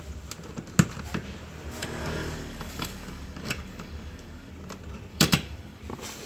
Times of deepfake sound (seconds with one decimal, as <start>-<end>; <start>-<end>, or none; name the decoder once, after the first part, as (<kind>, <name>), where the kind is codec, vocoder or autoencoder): 1.8-4.5 (codec, DAC); 5.1-5.8